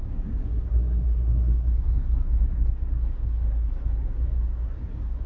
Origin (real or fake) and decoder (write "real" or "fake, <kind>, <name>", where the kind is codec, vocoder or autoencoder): fake, codec, SNAC